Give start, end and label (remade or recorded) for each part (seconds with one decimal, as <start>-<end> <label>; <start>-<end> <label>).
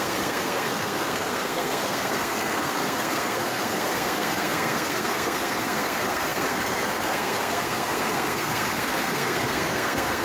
0.0-10.2 remade